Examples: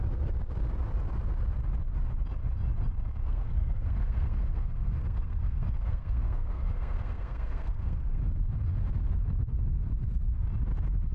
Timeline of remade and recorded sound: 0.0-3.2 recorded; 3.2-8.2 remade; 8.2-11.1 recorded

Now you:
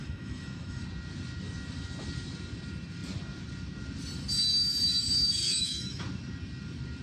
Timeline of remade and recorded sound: 0.0-0.8 remade; 0.8-5.4 recorded; 5.4-6.0 remade; 6.0-7.0 recorded

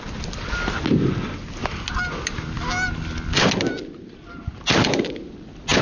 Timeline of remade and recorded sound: 0.0-5.8 recorded

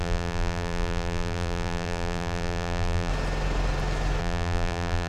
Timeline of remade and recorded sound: 0.0-3.1 remade; 3.1-4.2 recorded; 4.2-5.1 remade

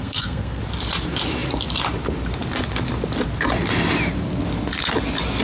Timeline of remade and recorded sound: 0.0-0.6 remade; 0.6-5.4 recorded